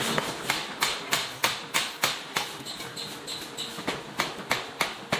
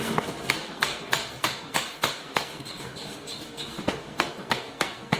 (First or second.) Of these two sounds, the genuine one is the first